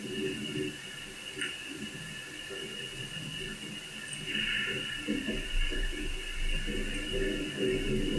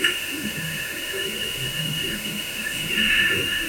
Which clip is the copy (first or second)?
second